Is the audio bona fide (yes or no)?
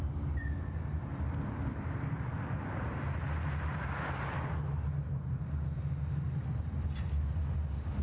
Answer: yes